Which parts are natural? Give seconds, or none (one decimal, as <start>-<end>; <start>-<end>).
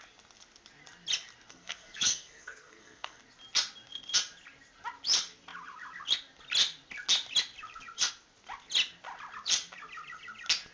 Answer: 0.0-1.5; 3.2-10.7